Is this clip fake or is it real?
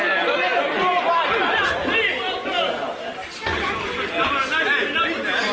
real